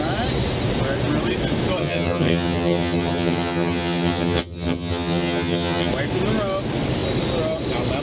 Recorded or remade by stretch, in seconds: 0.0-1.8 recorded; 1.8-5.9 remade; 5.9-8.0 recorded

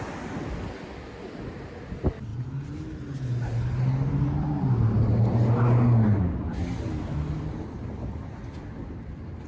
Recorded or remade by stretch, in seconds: 0.0-9.5 recorded

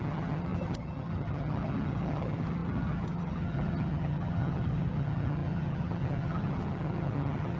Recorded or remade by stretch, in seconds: 0.0-7.6 remade

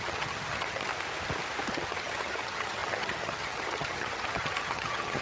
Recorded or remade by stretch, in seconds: 0.0-0.9 remade; 0.9-1.7 recorded; 1.7-5.2 remade

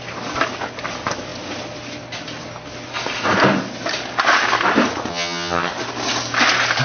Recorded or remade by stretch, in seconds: 0.0-5.1 recorded; 5.1-5.7 remade; 5.7-6.8 recorded

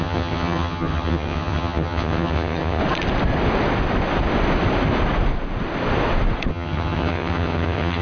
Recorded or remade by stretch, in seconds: 0.0-2.8 remade; 2.8-6.5 recorded; 6.5-8.0 remade

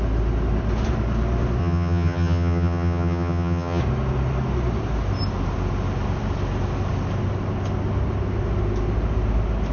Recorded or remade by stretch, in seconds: 0.0-1.6 recorded; 1.6-3.8 remade; 3.8-9.7 recorded

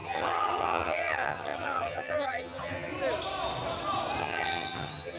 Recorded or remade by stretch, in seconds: 0.0-2.9 remade; 2.9-4.2 recorded; 4.2-5.2 remade